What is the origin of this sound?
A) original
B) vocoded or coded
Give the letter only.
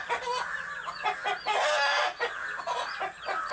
A